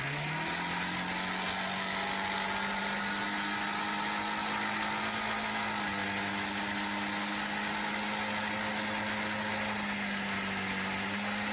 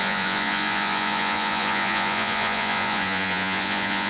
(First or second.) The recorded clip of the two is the first